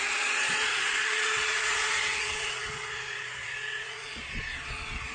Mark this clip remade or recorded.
remade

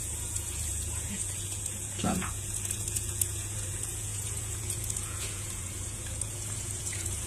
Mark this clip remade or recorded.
remade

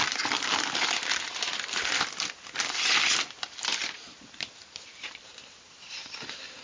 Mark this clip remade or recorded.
recorded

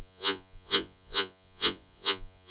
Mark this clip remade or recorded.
remade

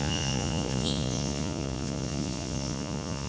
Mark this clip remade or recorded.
remade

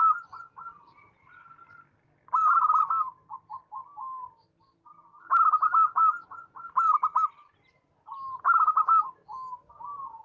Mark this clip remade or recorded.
recorded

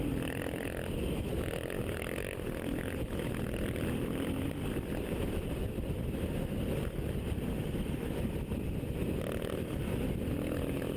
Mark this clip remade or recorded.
recorded